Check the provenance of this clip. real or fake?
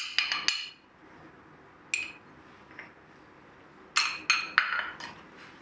real